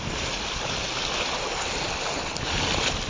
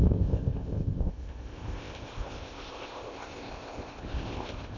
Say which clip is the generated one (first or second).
second